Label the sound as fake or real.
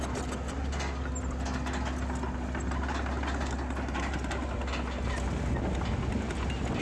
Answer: real